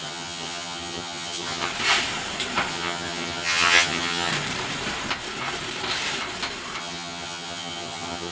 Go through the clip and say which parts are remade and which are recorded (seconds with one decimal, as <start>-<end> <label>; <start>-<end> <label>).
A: 0.0-1.7 remade; 1.7-2.7 recorded; 2.7-4.3 remade; 4.3-6.8 recorded; 6.8-8.3 remade